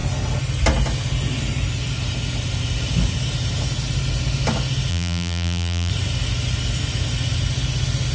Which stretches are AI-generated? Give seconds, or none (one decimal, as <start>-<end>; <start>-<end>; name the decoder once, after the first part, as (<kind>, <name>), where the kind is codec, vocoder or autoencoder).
4.9-5.9 (vocoder, BigVGAN v2)

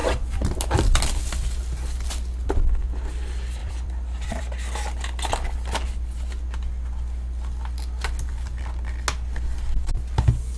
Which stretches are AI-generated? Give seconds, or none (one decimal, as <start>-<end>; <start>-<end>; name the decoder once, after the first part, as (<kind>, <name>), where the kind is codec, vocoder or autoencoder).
0.0-1.2 (vocoder, BigVGAN v2); 3.6-4.4

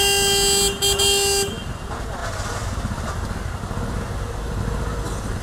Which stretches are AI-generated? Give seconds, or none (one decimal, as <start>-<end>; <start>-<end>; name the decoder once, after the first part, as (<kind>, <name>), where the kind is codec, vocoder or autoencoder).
none

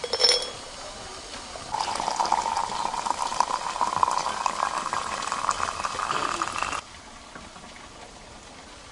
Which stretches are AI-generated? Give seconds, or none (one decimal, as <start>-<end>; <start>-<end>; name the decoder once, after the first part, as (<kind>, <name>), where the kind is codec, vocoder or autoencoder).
none

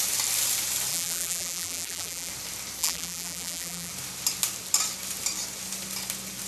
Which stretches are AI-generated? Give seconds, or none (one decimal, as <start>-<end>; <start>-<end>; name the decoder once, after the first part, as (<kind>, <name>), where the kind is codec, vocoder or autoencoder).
0.9-2.3 (vocoder, BigVGAN v2); 2.8-3.9

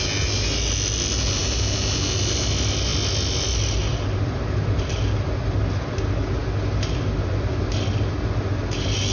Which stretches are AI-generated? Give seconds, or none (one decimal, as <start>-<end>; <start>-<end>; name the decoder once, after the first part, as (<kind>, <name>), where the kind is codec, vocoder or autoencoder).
none

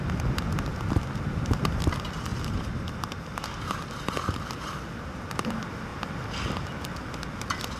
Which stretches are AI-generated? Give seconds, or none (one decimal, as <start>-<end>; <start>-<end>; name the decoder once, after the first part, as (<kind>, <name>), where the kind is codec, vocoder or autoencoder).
2.3-5.5 (vocoder, BigVGAN v2)